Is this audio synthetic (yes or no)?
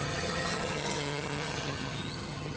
yes